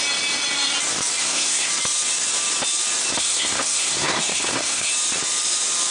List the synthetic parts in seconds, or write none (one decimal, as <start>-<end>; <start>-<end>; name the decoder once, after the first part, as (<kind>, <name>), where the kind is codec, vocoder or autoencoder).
1.2-1.7 (codec, SNAC); 3.2-4.9